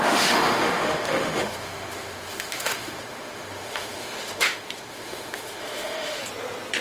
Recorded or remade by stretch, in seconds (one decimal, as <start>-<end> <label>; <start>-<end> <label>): 0.0-6.2 remade; 6.2-6.8 recorded